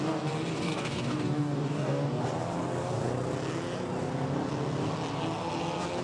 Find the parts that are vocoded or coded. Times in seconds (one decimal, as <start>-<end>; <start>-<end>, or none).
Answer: 0.5-2.2